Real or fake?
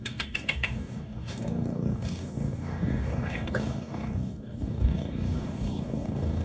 fake